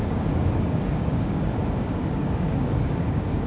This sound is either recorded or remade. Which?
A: remade